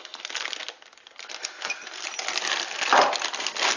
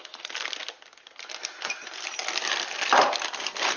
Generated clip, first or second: second